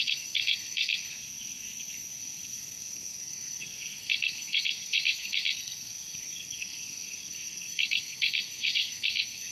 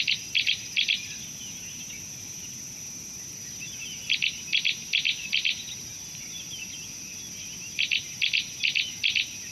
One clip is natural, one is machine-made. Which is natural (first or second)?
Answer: second